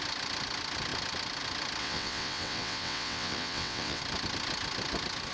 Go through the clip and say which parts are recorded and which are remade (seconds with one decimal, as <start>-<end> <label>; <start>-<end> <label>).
0.0-1.8 recorded; 1.8-4.0 remade; 4.0-5.3 recorded